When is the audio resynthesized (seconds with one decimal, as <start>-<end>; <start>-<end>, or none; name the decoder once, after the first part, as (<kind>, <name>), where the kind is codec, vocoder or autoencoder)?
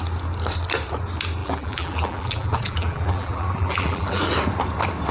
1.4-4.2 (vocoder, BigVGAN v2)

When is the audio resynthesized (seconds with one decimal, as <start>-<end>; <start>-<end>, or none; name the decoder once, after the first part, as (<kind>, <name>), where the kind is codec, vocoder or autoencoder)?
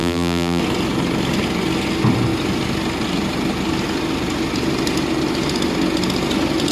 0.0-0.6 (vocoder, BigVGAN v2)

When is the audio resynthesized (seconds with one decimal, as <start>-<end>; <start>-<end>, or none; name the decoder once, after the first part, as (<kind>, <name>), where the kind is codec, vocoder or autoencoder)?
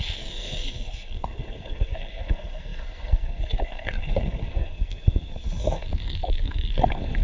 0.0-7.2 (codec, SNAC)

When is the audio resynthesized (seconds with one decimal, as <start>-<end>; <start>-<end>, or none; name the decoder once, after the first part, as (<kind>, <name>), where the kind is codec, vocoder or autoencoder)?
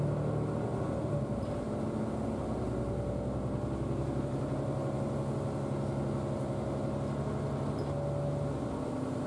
none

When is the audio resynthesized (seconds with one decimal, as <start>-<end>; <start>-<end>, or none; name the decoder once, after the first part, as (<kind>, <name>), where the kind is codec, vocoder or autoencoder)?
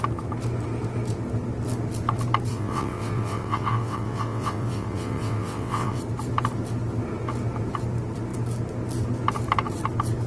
2.5-6.0 (vocoder, WaveNeXt)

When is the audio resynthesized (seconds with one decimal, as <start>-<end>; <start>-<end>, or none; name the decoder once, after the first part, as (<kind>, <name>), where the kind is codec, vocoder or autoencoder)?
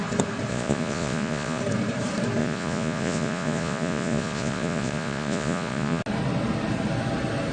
0.5-1.6 (vocoder, Vocos); 2.4-6.0